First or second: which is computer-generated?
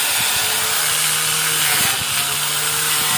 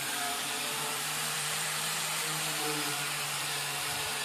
second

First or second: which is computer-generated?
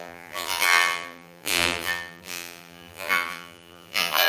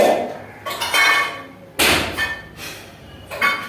first